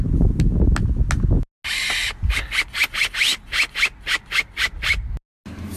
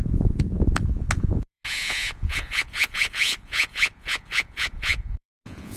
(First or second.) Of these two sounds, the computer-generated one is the second